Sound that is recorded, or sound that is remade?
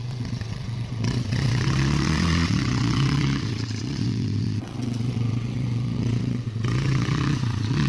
remade